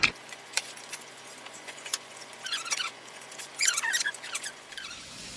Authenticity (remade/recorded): remade